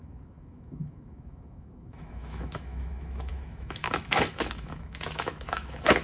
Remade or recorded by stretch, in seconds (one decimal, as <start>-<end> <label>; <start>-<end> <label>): 0.0-6.0 remade